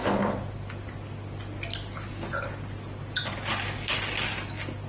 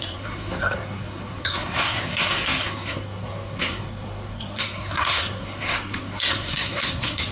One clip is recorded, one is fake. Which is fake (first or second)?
second